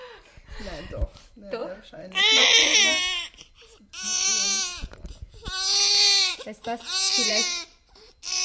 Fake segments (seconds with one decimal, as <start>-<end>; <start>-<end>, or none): 1.6-2.2